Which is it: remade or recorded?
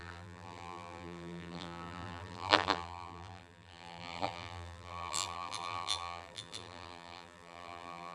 remade